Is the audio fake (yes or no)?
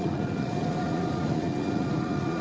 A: yes